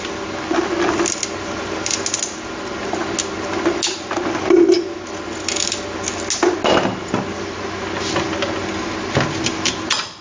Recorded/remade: recorded